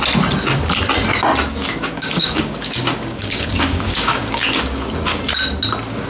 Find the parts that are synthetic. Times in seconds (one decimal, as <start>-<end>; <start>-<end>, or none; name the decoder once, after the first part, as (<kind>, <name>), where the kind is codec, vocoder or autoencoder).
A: 1.5-5.2 (codec, DAC)